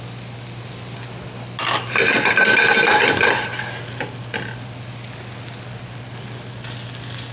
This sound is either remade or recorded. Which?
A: recorded